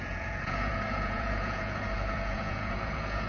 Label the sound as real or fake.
fake